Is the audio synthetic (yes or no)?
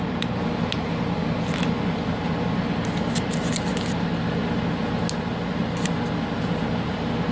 no